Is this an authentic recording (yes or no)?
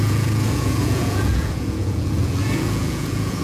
no